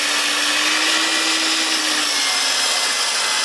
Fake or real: real